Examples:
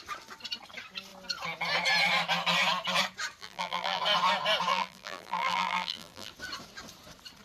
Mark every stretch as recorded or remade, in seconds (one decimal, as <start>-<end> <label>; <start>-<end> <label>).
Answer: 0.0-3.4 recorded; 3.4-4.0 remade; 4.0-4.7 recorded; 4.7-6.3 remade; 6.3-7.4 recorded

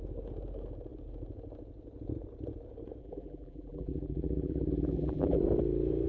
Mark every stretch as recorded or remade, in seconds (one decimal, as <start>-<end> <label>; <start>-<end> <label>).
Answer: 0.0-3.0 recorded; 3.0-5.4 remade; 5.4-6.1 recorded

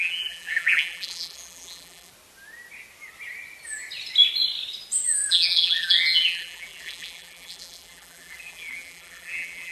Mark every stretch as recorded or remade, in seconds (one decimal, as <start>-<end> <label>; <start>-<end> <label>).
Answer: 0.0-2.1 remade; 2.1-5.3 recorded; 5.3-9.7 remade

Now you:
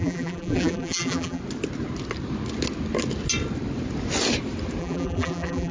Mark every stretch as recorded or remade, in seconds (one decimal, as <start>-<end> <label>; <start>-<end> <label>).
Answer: 0.0-1.4 remade; 1.4-4.8 recorded; 4.8-5.7 remade

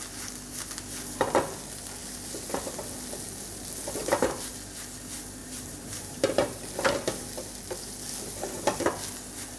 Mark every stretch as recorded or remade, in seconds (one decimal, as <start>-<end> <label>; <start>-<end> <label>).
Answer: 0.0-4.0 recorded; 4.0-4.5 remade; 4.5-5.4 recorded; 5.4-6.6 remade; 6.6-9.6 recorded

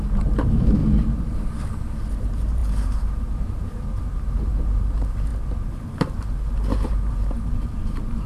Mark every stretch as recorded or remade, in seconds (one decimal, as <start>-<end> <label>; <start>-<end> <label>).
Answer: 0.0-0.8 remade; 0.8-2.2 recorded; 2.2-8.3 remade

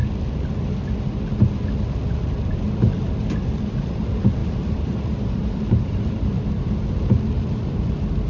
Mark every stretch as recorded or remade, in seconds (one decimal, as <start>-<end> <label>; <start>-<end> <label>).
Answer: 0.0-4.4 recorded; 4.4-6.3 remade; 6.3-8.3 recorded